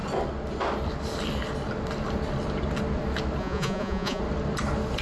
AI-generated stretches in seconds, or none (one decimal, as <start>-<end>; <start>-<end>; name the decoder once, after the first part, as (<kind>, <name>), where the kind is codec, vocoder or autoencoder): 3.4-4.2 (vocoder, Vocos)